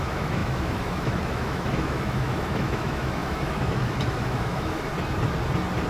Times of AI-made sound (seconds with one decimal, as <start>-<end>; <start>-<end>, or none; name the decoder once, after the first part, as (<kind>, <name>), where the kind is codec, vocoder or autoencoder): 0.0-4.9 (autoencoder, DAC-VAE)